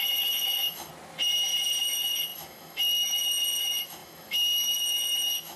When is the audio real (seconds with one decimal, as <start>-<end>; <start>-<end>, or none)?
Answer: 0.9-1.8